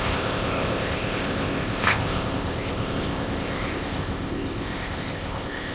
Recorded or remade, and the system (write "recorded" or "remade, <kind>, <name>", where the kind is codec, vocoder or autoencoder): remade, codec, ZipCodec